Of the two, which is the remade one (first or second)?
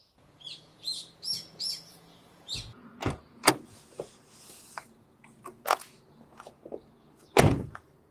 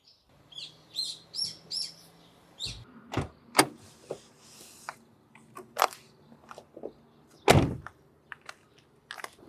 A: first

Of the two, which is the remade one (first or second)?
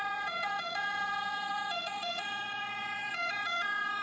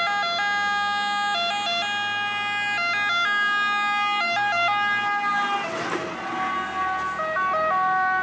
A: first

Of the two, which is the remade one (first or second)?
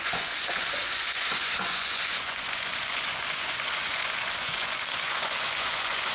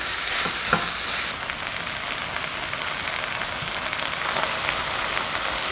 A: first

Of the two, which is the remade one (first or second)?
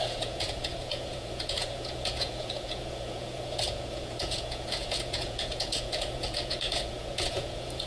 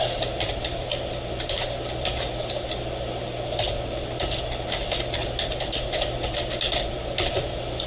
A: first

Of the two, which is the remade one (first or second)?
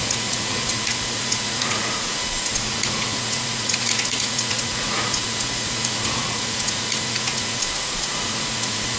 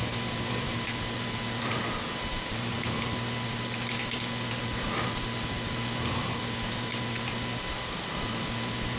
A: first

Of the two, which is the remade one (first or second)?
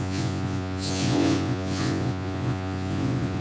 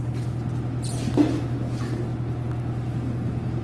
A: first